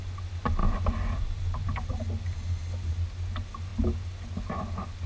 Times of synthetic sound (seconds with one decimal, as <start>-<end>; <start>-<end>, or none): 0.6-1.9